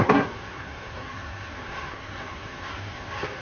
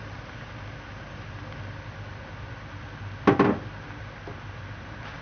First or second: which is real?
second